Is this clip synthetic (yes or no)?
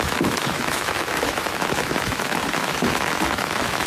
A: yes